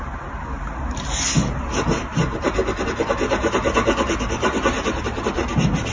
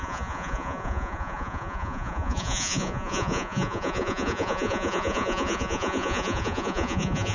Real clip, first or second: first